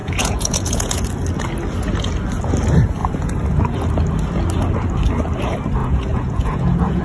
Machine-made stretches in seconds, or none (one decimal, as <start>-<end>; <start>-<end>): 0.0-1.1; 5.8-7.0

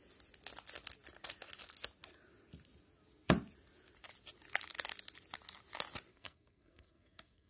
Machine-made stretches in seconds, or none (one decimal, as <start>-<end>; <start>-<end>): 6.1-7.5